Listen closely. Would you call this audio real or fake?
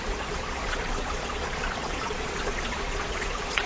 fake